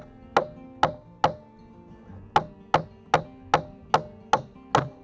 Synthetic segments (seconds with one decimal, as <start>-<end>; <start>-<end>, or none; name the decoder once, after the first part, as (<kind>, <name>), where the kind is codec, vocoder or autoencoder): none